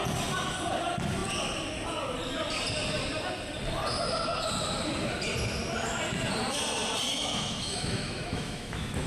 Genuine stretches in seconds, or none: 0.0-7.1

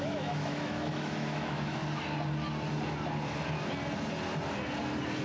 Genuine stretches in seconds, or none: 1.8-5.2